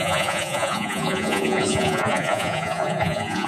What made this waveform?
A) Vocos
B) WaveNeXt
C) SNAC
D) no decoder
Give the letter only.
A